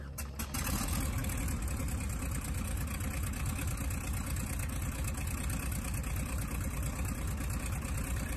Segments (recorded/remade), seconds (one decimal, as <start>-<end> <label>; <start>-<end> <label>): 0.0-8.4 recorded